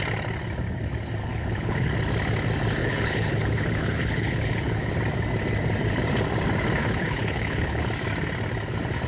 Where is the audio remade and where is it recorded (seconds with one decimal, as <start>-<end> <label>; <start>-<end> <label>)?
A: 0.0-1.2 recorded; 1.2-1.9 remade; 1.9-2.8 recorded; 2.8-4.9 remade; 4.9-6.8 recorded; 6.8-7.8 remade; 7.8-9.1 recorded